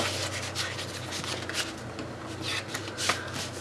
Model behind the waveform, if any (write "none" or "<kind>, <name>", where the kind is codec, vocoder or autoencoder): none